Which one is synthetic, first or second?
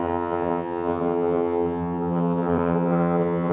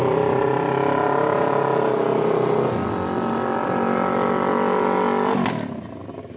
first